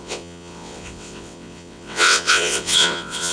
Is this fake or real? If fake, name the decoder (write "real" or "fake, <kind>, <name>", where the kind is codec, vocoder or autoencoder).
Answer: fake, vocoder, WaveNeXt